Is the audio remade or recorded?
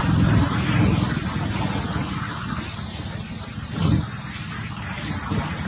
recorded